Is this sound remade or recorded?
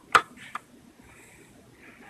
remade